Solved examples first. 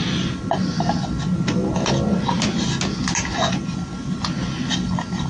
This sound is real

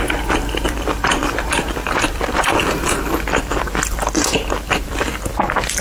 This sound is fake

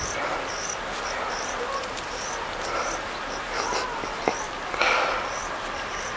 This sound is real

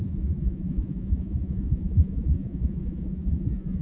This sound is fake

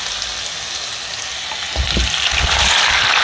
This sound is real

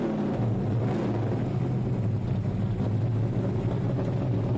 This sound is real